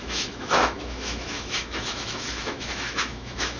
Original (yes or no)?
no